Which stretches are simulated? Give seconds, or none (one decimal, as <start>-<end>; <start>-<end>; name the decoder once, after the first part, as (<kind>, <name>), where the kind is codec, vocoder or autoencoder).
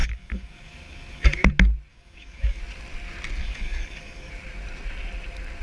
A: 0.0-1.5 (codec, DAC); 1.9-2.6; 3.4-4.3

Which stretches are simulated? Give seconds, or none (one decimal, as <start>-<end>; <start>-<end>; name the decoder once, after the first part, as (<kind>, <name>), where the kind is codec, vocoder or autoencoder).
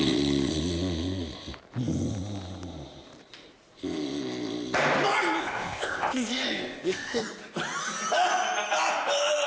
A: 5.4-7.2 (codec, ZipCodec)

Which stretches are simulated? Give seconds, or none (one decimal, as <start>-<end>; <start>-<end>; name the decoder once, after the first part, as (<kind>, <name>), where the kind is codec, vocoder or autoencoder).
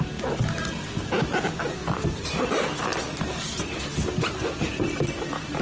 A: 1.8-5.6 (vocoder, BigVGAN v2)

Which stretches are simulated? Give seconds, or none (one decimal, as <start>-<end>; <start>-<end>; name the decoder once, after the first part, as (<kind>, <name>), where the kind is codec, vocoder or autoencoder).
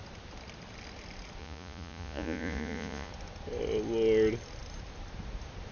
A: 1.4-3.1 (vocoder, Vocos)